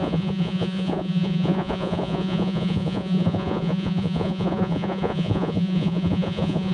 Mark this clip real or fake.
fake